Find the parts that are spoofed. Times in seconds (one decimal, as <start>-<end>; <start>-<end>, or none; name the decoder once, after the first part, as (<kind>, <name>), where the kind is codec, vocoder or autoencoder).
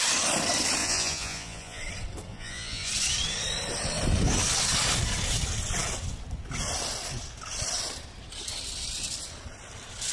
0.8-1.8 (vocoder, Vocos); 2.3-2.9